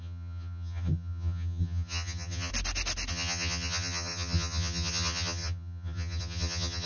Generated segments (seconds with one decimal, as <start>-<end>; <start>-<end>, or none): 0.0-2.5; 3.1-6.9